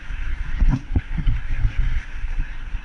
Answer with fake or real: fake